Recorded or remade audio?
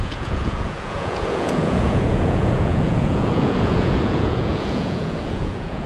remade